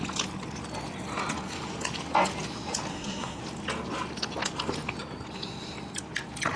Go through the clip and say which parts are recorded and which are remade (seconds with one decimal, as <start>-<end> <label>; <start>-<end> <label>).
0.0-2.9 recorded; 2.9-3.4 remade; 3.4-6.6 recorded